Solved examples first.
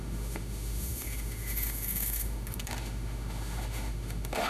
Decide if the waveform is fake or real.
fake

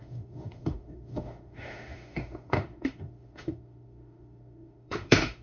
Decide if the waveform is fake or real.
fake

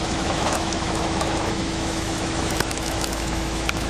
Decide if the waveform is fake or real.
fake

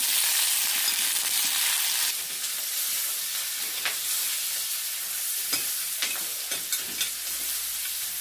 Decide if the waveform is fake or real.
real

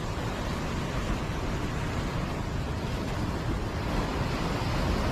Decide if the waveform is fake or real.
real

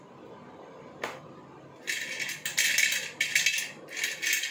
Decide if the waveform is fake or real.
real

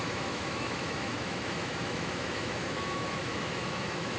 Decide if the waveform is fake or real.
fake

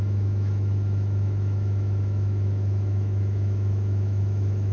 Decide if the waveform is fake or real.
fake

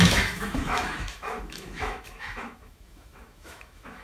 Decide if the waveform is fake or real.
fake